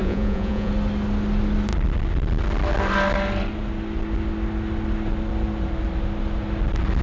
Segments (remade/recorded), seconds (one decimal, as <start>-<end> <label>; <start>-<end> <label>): 0.0-0.7 remade; 0.7-7.0 recorded